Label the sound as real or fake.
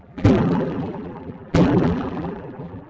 fake